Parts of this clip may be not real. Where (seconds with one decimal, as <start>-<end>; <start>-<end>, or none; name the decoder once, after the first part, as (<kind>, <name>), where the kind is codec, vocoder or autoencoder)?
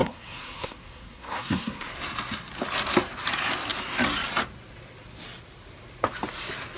0.0-1.9 (codec, SNAC)